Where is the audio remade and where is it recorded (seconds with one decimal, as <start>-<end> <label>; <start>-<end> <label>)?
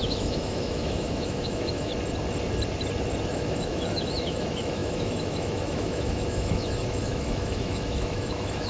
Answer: 0.0-1.9 remade; 1.9-3.3 recorded; 3.3-8.7 remade